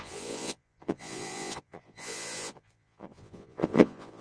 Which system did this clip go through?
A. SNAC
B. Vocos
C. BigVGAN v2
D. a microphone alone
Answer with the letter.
B